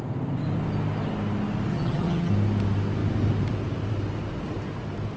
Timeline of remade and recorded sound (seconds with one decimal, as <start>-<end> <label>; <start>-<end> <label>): 0.0-1.7 recorded; 1.7-2.3 remade; 2.3-5.2 recorded